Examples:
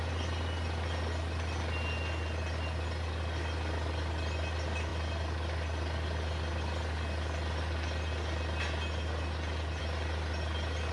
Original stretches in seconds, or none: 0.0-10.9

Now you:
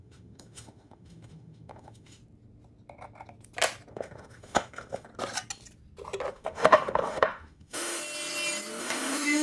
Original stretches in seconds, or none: 2.2-3.9; 5.1-6.3; 8.0-8.8

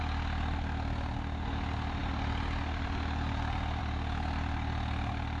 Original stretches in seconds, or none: 0.0-5.4